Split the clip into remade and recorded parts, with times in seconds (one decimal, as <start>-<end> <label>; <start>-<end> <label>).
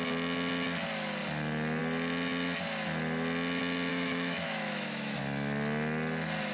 0.0-3.9 recorded; 3.9-5.2 remade; 5.2-6.5 recorded